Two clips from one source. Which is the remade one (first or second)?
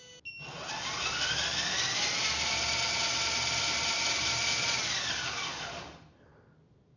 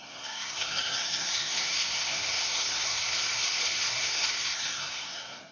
second